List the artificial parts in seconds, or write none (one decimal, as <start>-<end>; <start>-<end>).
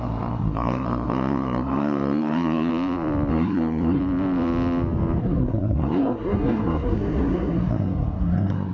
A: 0.0-2.7; 3.3-4.0; 5.2-8.7